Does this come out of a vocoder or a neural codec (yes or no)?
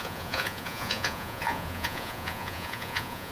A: yes